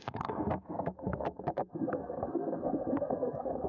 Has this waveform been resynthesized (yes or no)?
yes